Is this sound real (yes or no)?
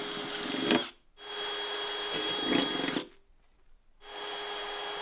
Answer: yes